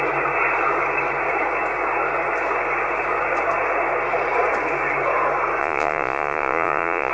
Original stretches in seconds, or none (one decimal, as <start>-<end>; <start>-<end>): 0.0-5.6